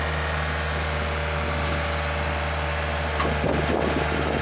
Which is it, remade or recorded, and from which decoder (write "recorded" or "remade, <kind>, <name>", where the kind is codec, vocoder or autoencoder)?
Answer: recorded